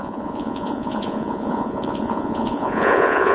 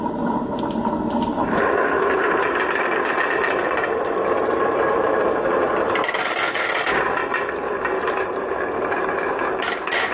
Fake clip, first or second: first